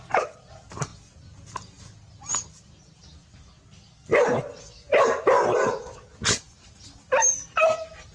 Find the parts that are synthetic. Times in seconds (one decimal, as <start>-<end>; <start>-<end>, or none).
none